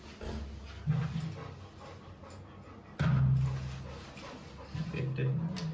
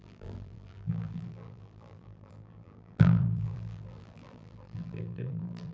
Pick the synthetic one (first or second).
second